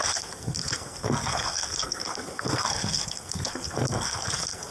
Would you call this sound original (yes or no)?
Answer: no